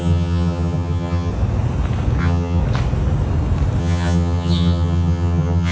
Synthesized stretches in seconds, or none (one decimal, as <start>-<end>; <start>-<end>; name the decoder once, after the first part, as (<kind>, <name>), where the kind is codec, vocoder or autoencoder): 0.0-1.3 (vocoder, HiFi-GAN); 2.2-2.6; 3.8-5.7

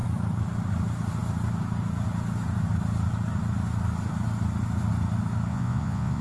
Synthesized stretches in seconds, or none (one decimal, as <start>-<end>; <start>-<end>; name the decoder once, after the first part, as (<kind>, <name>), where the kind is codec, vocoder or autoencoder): 5.5-6.2 (vocoder, Vocos)

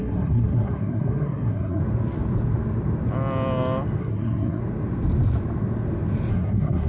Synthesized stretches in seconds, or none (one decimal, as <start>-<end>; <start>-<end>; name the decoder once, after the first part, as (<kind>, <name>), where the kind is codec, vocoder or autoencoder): 0.0-1.8 (codec, SNAC); 4.0-4.6; 6.3-6.9

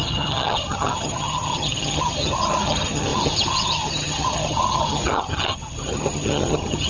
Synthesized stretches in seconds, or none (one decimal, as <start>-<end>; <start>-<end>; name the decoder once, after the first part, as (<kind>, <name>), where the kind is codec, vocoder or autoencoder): 0.0-6.9 (vocoder, HiFi-GAN)

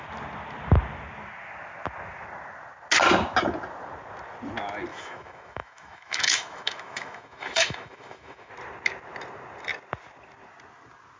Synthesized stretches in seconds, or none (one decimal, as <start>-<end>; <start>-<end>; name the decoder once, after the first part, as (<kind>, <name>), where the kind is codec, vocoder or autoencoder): 4.9-8.5 (autoencoder, DAC-VAE)

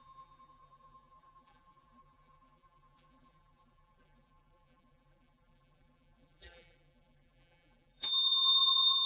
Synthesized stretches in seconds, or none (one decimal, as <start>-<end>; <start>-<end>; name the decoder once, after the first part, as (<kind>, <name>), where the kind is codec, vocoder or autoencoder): 0.0-9.1 (vocoder, BigVGAN v2)

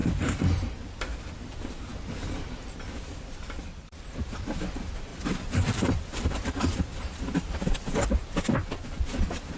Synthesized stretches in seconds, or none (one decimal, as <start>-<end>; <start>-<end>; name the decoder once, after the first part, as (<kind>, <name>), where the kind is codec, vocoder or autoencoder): 0.0-0.9 (vocoder, BigVGAN v2); 5.1-6.8

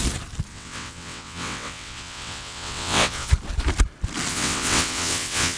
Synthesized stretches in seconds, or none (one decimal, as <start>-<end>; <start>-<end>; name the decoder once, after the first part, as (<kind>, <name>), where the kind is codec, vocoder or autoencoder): 0.5-3.3 (vocoder, WaveNeXt); 4.3-5.6